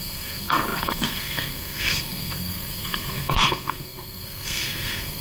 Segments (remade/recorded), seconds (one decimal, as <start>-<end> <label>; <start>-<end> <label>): 0.0-5.2 remade